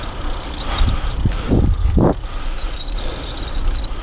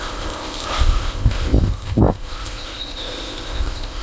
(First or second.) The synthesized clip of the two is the second